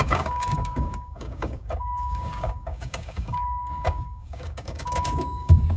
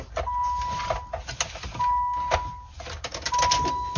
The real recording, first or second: second